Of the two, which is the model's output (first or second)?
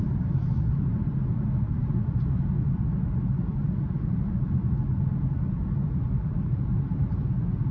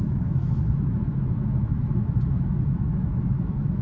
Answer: second